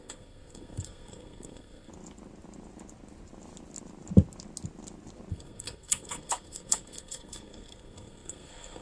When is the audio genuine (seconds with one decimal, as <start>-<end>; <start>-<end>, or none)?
1.9-5.3